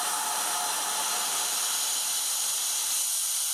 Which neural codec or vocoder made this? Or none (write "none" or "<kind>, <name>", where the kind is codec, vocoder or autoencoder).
none